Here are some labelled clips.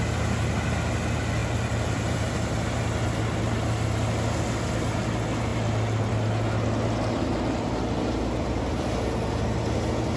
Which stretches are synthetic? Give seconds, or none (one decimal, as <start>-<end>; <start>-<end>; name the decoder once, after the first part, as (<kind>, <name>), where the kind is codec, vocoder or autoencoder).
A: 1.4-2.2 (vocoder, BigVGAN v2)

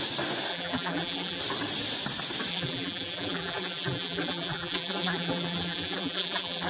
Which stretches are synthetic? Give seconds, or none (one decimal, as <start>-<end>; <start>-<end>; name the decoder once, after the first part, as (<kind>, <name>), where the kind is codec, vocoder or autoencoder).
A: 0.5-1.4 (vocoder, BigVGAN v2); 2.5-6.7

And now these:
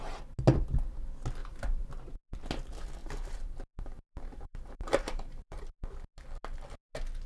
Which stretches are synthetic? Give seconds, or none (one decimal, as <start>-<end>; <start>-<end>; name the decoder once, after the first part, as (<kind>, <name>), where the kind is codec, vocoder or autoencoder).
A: 1.4-1.9 (vocoder, BigVGAN v2); 3.0-5.6

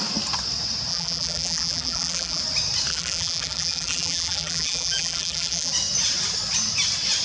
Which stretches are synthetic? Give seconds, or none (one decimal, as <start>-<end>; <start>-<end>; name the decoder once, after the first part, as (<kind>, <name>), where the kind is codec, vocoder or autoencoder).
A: 0.9-2.4 (vocoder, BigVGAN v2); 2.9-5.7

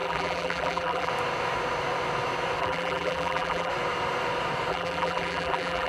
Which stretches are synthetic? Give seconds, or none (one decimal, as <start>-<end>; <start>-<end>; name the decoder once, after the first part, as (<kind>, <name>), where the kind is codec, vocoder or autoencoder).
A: 0.0-1.1 (vocoder, BigVGAN v2); 2.6-3.7; 4.7-5.9

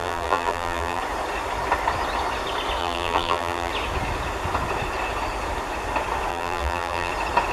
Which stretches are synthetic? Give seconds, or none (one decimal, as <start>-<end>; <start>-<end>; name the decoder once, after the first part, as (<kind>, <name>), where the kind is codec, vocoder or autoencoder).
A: 0.0-1.0 (vocoder, BigVGAN v2); 2.8-3.7; 6.3-7.1

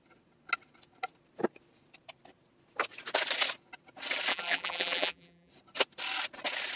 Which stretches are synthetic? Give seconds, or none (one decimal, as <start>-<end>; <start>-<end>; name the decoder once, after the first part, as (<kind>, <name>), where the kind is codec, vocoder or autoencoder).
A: 4.3-5.5 (vocoder, BigVGAN v2)